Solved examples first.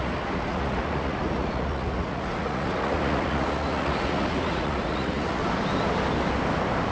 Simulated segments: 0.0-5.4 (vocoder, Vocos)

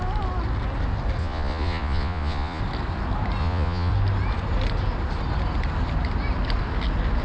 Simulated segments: 1.2-2.6 (vocoder, Vocos); 3.4-3.9

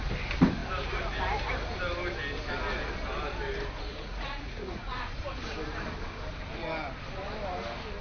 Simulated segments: 3.9-5.0 (vocoder, Vocos)

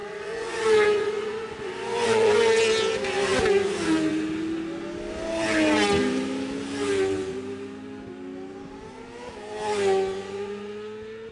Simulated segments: 0.0-2.3 (vocoder, Vocos)